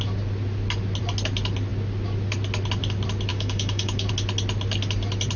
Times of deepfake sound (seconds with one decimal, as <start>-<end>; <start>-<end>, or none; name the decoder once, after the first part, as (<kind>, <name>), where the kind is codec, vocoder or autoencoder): 3.3-4.1 (autoencoder, DAC-VAE)

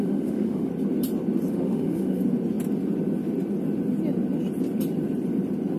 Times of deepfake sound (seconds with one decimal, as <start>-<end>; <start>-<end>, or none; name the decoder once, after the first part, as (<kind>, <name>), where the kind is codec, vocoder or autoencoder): 0.0-0.7 (autoencoder, DAC-VAE); 1.5-2.2

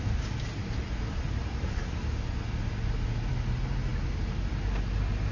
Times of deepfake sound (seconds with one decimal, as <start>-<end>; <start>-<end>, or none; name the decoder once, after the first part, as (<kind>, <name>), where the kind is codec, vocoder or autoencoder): none

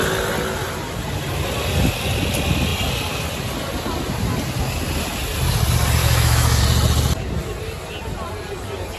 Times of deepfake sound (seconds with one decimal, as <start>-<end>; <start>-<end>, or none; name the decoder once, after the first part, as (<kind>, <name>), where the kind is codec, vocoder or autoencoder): 6.0-6.6 (autoencoder, DAC-VAE)

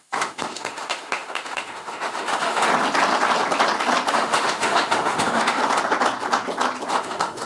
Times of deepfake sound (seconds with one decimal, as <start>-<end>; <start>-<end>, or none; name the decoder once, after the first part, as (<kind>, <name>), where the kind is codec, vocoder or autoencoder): 0.0-2.7 (autoencoder, DAC-VAE); 4.1-5.6; 6.9-7.5